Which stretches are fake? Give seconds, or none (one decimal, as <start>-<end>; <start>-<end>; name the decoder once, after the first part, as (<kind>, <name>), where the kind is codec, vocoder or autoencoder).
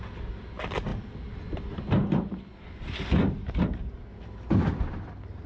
none